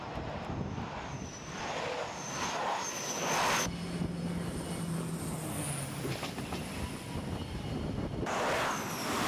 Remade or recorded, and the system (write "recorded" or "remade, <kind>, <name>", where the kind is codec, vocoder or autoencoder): recorded